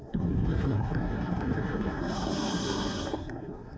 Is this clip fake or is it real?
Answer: fake